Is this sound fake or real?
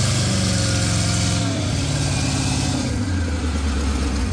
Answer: real